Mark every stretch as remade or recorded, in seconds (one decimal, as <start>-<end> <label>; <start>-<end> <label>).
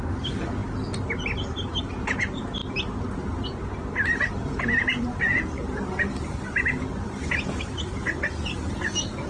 0.0-9.3 recorded